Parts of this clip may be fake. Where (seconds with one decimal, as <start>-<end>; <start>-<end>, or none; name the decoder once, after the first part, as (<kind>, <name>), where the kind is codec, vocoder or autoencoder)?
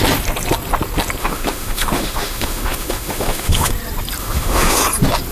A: 1.2-3.7 (autoencoder, DAC-VAE); 4.2-4.8